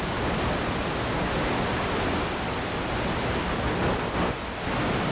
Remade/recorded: remade